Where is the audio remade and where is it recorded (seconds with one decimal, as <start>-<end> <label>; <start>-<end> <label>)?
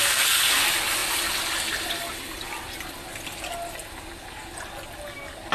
0.0-5.5 recorded